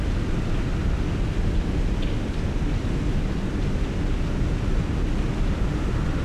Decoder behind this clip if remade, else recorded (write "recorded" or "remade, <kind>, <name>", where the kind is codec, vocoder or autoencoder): recorded